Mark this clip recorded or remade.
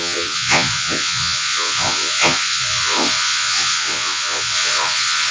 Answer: remade